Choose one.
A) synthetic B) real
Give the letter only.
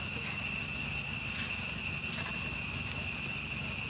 B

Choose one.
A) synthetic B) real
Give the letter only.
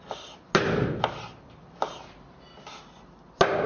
B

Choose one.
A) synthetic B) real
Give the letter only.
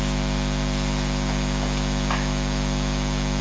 B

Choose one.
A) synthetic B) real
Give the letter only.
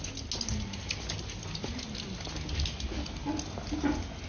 B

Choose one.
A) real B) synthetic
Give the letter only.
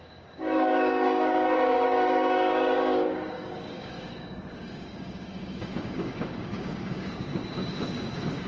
B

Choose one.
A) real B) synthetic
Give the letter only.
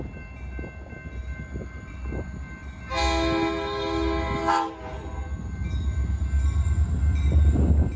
A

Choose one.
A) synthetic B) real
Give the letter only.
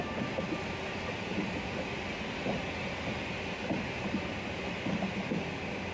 B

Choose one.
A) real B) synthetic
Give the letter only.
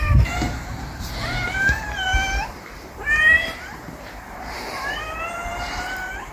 B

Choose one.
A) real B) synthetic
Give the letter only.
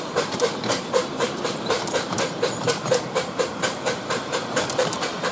B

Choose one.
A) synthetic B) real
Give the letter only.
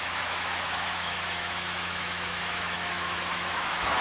A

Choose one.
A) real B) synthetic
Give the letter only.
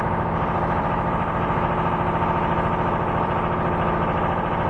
B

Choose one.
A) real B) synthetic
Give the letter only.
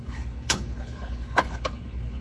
B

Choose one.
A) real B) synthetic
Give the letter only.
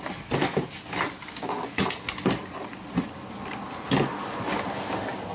A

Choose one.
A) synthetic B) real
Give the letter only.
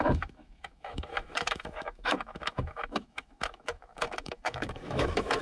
A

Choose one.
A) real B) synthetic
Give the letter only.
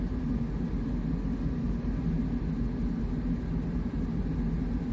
A